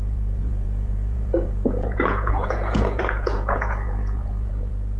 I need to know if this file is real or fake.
fake